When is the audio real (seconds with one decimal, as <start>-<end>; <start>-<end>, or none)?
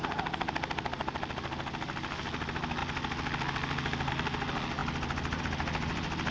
0.0-6.3